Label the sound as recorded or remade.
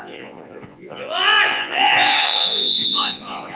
remade